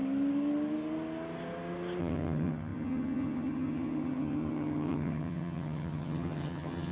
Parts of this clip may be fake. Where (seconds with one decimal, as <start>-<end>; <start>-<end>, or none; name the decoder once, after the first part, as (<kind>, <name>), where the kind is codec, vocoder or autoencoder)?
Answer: 2.0-6.9 (vocoder, HiFi-GAN)